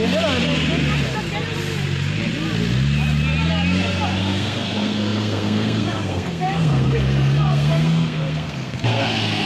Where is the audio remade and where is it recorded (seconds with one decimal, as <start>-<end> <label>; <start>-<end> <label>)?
0.0-4.2 recorded; 4.2-9.5 remade